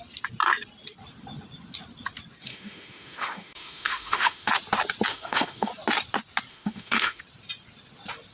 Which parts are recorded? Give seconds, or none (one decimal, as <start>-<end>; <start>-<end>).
0.0-2.5; 4.5-5.1; 5.7-6.5; 7.2-8.3